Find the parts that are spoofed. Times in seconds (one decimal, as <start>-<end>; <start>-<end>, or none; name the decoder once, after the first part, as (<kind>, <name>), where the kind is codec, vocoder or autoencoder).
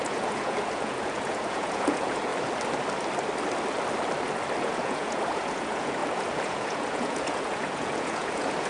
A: 0.0-2.3 (vocoder, Vocos); 4.6-8.7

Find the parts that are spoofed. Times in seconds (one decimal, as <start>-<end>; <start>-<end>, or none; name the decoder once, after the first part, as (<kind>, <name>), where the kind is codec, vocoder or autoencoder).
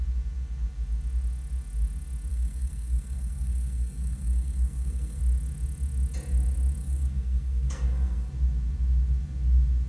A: 2.3-5.2 (codec, SNAC); 6.8-8.3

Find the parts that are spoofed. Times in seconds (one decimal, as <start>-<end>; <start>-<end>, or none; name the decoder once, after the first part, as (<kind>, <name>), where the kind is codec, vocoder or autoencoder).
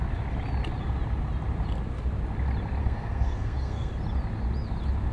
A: 2.8-3.9 (codec, SNAC)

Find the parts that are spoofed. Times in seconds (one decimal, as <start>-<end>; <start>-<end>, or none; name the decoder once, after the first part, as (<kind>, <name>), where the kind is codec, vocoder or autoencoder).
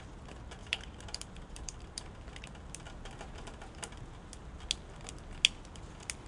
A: 0.6-2.1 (vocoder, BigVGAN v2)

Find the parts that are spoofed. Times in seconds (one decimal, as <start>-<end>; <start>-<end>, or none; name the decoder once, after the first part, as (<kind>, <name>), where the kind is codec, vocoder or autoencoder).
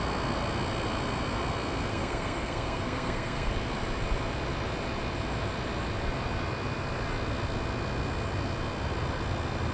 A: 1.9-3.5 (codec, SNAC)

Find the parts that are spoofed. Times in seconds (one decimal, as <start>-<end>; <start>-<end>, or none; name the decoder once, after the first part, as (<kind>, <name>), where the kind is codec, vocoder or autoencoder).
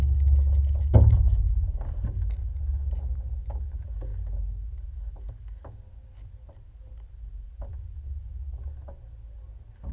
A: none